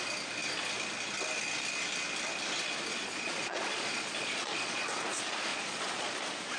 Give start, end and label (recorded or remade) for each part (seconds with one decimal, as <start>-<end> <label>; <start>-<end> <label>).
0.0-2.9 recorded; 2.9-4.8 remade; 4.8-5.5 recorded; 5.5-6.1 remade; 6.1-6.6 recorded